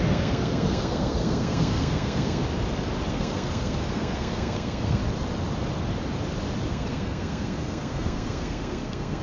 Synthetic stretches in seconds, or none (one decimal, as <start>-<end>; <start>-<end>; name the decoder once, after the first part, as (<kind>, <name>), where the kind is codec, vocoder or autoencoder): 0.0-2.4 (codec, SNAC); 3.1-5.0; 6.7-9.2